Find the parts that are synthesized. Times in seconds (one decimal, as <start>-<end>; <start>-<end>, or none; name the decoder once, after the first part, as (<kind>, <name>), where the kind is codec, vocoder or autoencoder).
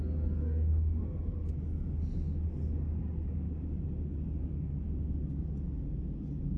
0.4-1.0 (autoencoder, DAC-VAE)